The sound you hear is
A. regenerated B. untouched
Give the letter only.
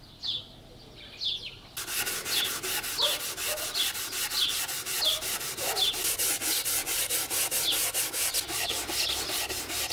B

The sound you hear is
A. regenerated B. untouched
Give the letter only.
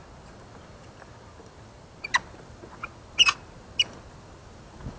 B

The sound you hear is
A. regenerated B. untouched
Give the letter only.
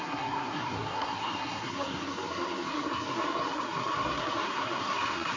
A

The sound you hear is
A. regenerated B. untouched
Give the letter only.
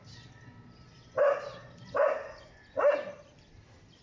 B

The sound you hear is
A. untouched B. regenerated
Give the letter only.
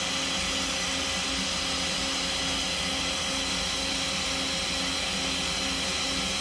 A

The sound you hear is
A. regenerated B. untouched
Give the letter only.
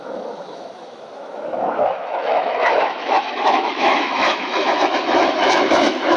A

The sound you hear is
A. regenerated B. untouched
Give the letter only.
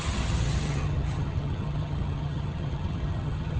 A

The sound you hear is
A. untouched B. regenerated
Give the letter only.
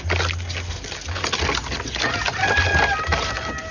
A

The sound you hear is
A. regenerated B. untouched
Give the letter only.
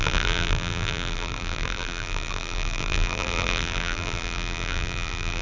A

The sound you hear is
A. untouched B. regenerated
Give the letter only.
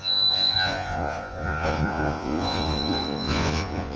B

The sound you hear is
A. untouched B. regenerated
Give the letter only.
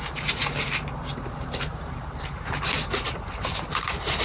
B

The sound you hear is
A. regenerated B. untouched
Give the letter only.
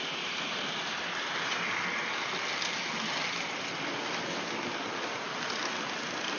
B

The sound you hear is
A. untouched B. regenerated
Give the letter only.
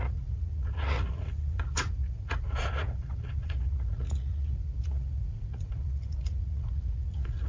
B